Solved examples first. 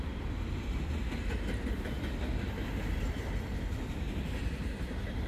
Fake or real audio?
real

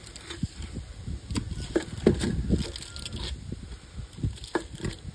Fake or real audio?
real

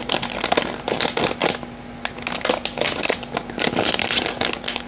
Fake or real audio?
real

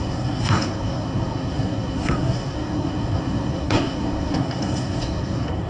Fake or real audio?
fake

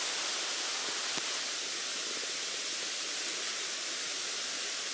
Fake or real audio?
real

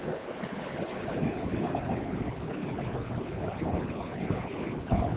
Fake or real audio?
fake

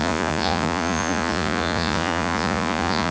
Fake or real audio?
fake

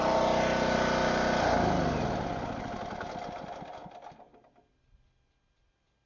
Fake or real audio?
real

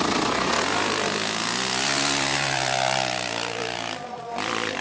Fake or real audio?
real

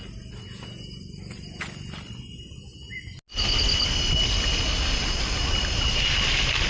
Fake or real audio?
real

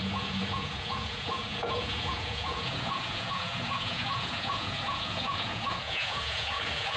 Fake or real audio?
fake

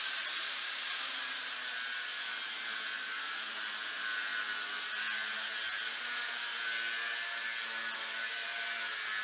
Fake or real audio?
real